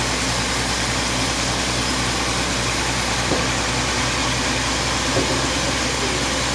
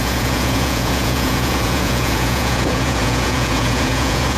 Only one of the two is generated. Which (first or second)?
second